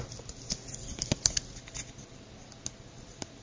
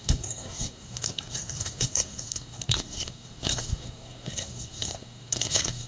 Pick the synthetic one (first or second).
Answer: second